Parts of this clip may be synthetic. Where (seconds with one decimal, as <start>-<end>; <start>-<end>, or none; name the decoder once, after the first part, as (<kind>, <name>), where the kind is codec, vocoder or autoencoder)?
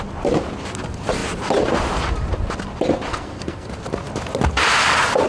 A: 3.1-3.7 (codec, SNAC)